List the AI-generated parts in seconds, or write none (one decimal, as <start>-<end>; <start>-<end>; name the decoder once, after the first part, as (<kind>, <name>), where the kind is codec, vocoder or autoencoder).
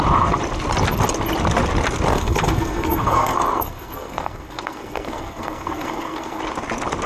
2.1-6.4 (codec, SNAC)